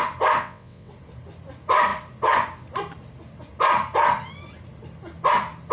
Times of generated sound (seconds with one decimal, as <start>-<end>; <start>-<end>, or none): 0.4-0.9